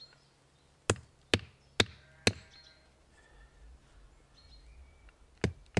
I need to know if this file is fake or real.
real